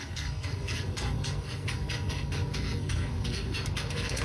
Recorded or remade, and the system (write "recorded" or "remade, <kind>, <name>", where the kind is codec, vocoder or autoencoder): remade, codec, SNAC